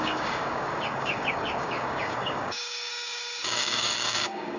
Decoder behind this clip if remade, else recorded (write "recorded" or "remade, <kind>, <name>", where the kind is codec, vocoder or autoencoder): remade, codec, DAC